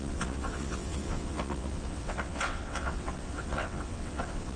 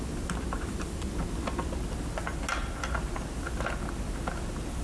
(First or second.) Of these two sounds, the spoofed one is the first